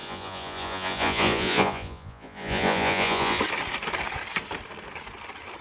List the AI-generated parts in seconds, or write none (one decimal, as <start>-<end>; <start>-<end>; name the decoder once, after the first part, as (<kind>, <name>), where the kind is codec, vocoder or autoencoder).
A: 0.0-3.4 (vocoder, Vocos)